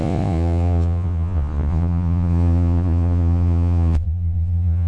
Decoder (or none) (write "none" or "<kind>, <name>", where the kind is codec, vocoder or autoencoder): vocoder, Vocos